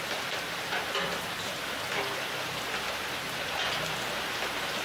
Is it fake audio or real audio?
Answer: real